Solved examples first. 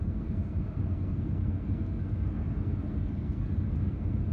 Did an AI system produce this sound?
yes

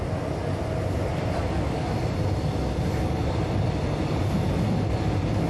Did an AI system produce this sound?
no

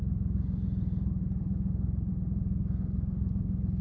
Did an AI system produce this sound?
no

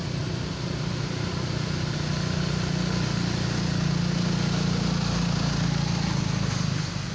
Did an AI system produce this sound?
no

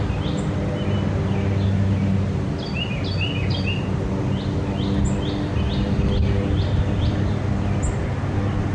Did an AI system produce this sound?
no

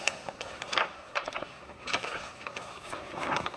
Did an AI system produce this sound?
yes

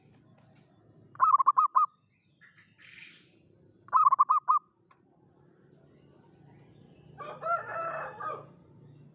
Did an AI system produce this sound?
no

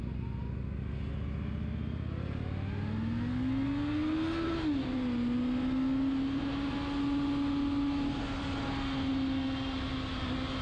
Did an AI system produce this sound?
no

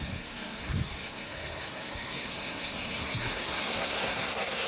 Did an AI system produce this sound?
yes